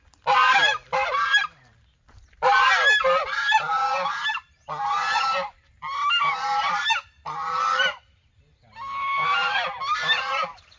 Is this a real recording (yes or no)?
yes